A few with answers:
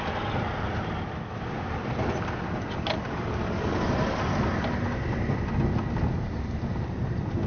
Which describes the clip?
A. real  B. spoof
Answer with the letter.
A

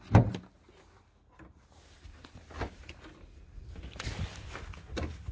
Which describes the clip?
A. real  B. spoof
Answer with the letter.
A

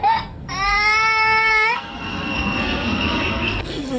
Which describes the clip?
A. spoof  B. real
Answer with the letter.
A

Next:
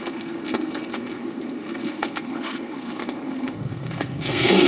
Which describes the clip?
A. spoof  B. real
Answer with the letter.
A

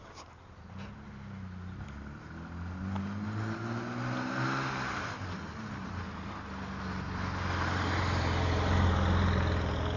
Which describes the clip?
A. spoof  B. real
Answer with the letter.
B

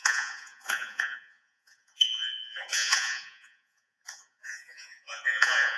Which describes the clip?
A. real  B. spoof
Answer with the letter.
B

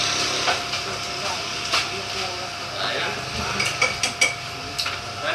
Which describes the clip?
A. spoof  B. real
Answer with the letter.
B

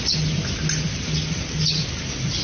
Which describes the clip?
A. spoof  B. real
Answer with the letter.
B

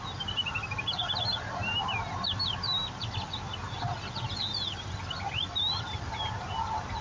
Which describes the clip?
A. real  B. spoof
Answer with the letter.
A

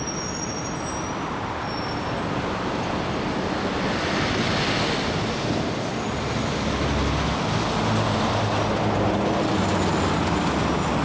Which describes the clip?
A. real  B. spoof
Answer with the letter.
A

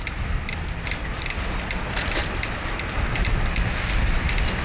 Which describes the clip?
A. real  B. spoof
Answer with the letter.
A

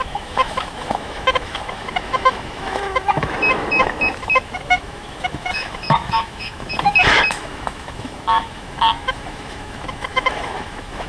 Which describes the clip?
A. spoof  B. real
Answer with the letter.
A